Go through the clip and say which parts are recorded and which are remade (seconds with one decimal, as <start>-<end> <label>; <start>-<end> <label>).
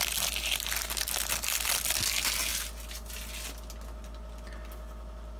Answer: 0.0-5.4 recorded